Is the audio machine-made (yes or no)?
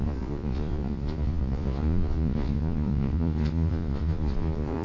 yes